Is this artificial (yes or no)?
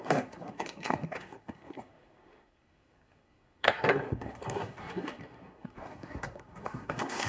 yes